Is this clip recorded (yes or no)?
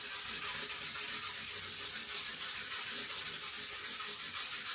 yes